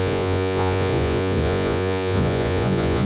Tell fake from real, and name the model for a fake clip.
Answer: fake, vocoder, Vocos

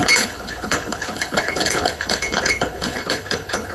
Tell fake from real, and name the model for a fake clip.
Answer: fake, codec, HILCodec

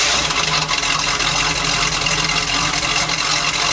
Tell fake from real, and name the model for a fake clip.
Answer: real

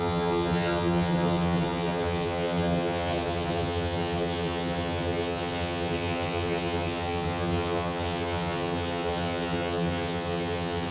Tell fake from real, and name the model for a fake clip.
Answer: fake, vocoder, HiFi-GAN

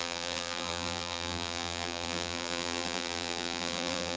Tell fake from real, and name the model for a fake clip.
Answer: fake, vocoder, BigVGAN v2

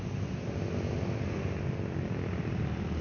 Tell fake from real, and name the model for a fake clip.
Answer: real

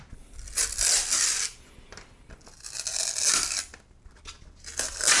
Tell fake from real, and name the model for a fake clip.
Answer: real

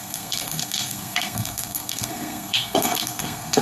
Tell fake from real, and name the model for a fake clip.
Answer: fake, codec, SNAC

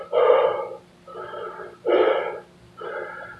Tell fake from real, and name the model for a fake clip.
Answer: real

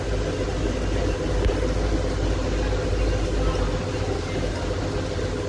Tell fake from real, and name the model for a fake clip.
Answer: real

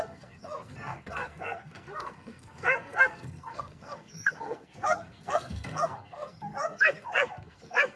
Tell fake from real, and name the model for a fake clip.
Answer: fake, codec, SNAC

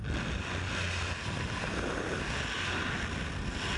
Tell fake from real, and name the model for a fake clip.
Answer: real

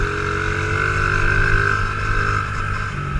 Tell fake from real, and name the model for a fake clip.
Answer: real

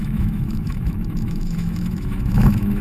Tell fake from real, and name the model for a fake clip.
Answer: fake, autoencoder, DAC-VAE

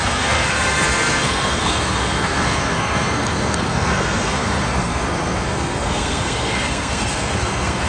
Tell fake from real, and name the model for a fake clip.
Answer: fake, codec, SNAC